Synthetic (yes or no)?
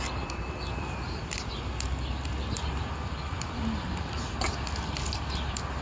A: no